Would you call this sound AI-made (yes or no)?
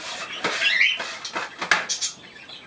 no